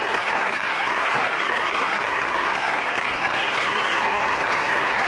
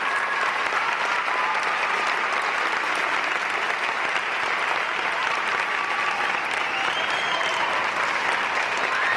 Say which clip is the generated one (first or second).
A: first